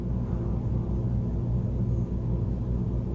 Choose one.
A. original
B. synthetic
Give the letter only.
A